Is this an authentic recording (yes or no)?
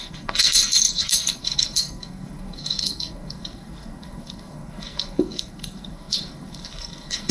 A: no